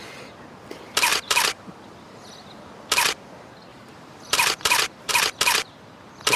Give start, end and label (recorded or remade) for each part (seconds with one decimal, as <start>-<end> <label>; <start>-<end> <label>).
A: 0.0-1.1 recorded; 1.1-1.7 remade; 1.7-3.7 recorded; 3.7-5.1 remade; 5.1-6.4 recorded